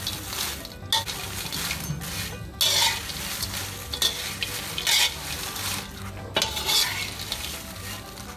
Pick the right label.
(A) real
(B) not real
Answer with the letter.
A